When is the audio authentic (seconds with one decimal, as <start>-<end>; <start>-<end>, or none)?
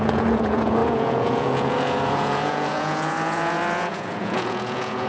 none